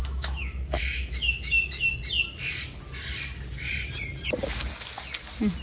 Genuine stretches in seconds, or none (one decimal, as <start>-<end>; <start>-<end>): 1.9-5.6